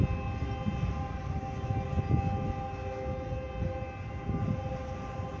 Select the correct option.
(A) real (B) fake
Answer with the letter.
A